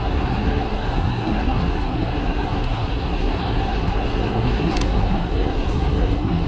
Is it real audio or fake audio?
fake